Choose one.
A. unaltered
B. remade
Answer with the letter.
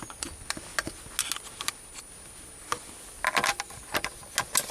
A